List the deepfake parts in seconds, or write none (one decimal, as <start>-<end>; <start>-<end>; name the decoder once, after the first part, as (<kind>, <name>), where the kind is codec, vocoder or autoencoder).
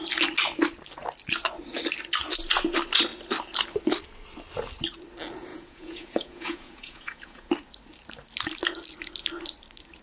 5.5-7.5 (vocoder, Vocos)